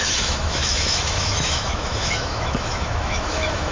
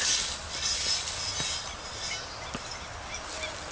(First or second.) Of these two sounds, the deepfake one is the first